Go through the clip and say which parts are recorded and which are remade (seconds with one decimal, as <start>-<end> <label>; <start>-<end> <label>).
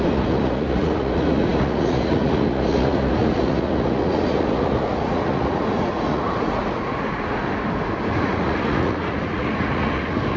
0.0-7.4 remade; 7.4-8.1 recorded; 8.1-10.4 remade